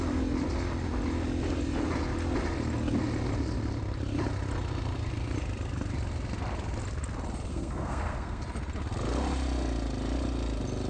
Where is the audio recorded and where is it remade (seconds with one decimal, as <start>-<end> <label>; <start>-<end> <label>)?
0.0-7.5 recorded; 7.5-8.4 remade; 8.4-10.9 recorded